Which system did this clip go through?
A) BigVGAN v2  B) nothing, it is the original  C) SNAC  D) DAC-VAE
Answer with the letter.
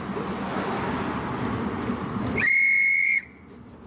B